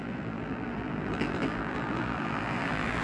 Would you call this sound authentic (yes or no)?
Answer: no